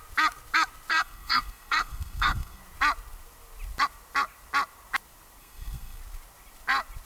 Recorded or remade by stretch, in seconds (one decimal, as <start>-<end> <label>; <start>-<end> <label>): 0.0-0.9 recorded; 0.9-2.6 remade; 2.6-5.4 recorded; 5.4-6.0 remade; 6.0-7.1 recorded